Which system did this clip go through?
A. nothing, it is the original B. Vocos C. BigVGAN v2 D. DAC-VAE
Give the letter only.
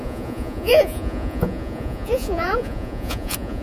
B